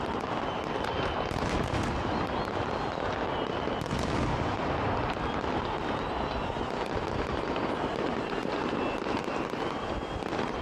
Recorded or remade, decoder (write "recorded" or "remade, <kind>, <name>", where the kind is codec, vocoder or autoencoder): recorded